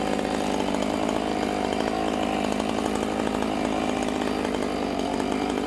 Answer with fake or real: real